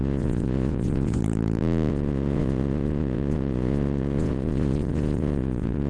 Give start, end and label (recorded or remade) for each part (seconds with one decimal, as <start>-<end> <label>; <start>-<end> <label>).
0.0-1.2 remade; 1.2-1.9 recorded; 1.9-5.9 remade